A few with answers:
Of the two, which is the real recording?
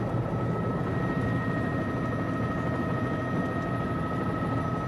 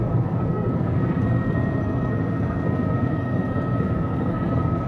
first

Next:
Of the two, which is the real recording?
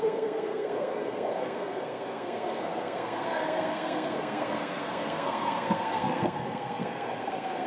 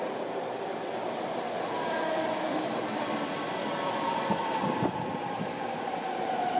second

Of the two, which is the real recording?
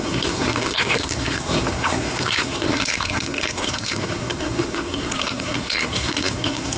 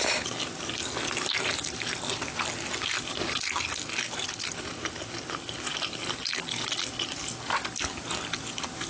second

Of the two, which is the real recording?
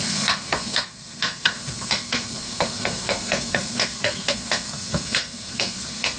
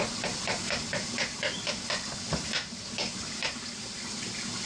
second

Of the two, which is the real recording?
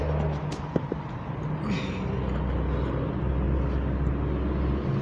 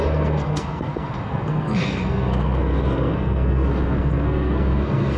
first